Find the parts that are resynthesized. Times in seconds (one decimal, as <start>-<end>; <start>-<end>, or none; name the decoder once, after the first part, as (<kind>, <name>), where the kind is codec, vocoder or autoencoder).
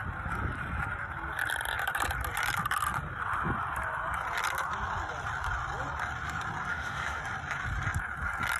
6.7-7.2 (autoencoder, DAC-VAE)